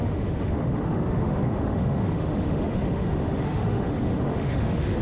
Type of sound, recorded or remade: remade